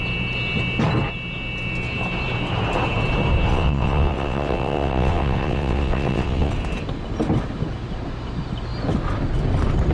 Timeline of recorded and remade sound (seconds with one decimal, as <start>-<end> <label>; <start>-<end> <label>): 0.0-3.5 recorded; 3.5-6.5 remade; 6.5-9.9 recorded